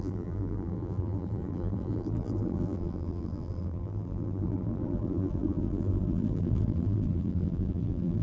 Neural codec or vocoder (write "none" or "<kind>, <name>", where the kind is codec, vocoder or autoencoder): vocoder, BigVGAN v2